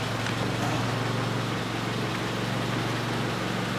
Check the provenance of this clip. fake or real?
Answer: real